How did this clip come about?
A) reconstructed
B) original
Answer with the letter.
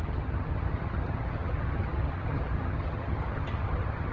A